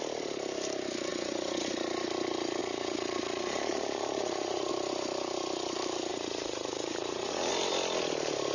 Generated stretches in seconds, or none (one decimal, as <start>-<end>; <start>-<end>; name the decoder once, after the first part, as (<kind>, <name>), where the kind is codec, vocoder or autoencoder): 1.1-1.7 (vocoder, Vocos); 2.6-4.7; 6.1-7.5